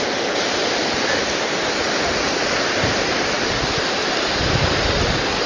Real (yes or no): yes